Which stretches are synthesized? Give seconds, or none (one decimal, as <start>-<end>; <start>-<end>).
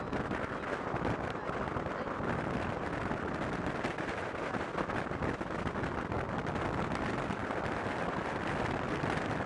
none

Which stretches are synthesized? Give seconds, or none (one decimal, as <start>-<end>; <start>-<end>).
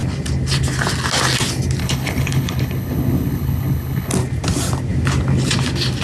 1.8-4.1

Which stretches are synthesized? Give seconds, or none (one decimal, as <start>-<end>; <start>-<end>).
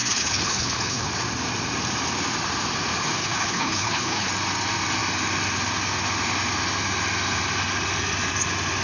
0.0-1.1; 3.2-4.3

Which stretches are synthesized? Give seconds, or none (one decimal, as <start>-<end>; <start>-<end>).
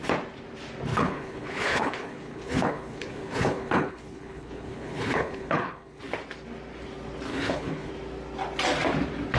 0.9-6.0; 7.3-7.9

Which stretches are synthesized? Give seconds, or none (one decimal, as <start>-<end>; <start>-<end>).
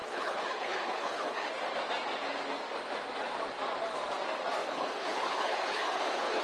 0.0-1.5; 4.6-6.4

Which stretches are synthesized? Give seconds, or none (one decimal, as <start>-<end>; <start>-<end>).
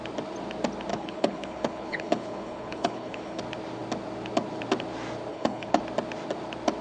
0.9-3.4; 5.3-5.8